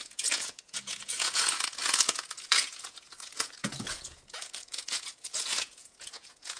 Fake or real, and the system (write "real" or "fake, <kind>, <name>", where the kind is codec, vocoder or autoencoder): fake, vocoder, Vocos